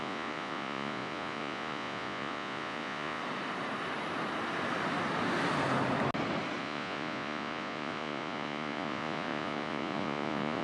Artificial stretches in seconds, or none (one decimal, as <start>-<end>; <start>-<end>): 0.0-3.2; 6.6-10.6